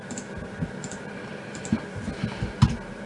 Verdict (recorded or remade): recorded